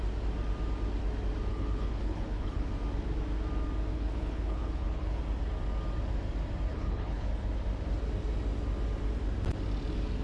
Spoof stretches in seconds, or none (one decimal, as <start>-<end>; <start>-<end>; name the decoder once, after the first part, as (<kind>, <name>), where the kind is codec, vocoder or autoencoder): 1.5-2.7 (codec, HILCodec); 3.9-5.2; 6.7-7.3